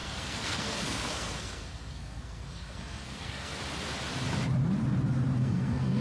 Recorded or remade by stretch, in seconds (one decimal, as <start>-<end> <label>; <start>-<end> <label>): 0.0-3.6 remade; 3.6-5.4 recorded; 5.4-6.0 remade